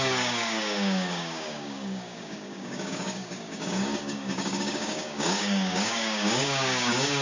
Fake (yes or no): yes